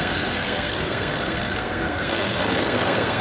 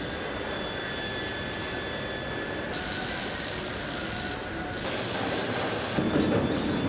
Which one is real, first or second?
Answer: second